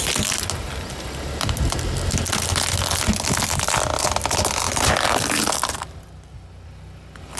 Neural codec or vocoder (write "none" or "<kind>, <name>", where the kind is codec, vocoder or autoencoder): none